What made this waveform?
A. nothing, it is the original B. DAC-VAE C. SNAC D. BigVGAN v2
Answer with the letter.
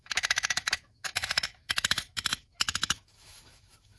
B